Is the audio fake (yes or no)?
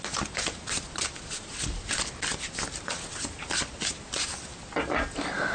no